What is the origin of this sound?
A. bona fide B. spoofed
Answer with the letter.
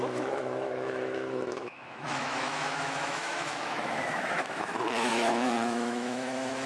B